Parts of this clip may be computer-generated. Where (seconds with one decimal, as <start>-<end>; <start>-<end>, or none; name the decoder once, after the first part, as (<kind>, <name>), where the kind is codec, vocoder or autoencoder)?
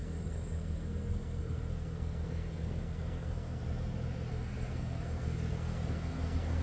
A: 0.0-3.6 (codec, SNAC); 4.3-6.6